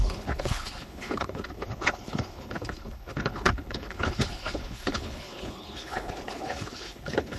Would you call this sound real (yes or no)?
no